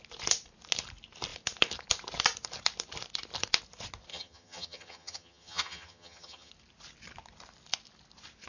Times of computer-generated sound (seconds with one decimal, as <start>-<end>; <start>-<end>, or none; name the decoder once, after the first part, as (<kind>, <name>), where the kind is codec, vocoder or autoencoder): 4.1-6.5 (vocoder, HiFi-GAN)